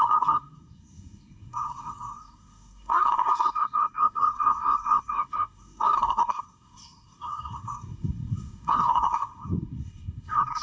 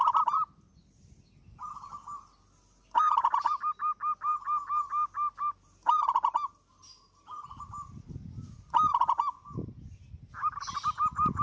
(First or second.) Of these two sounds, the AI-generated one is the first